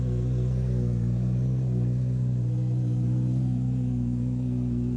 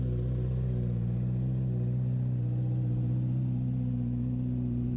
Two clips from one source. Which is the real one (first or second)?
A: second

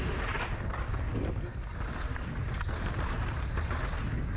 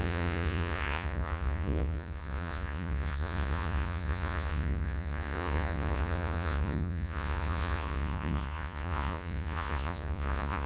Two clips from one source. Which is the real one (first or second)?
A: first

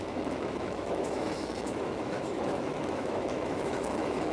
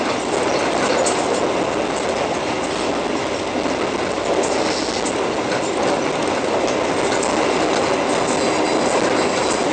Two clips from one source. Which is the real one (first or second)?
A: second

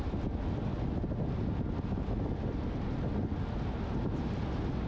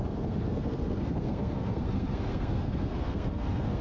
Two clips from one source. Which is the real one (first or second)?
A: first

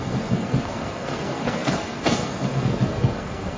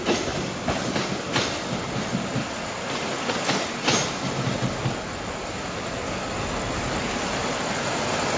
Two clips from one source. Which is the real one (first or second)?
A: second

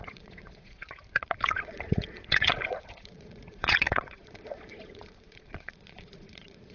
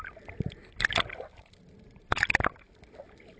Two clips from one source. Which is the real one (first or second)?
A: second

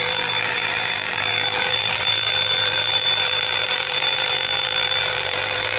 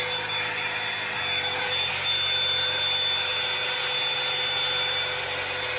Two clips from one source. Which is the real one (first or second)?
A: second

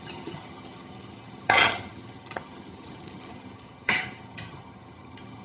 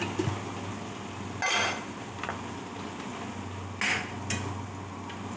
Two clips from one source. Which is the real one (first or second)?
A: second